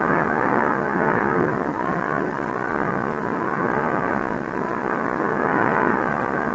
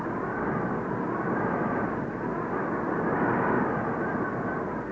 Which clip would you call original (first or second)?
second